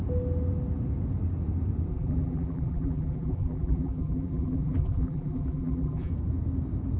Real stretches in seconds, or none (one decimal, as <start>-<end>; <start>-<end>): 0.0-1.9; 6.1-7.0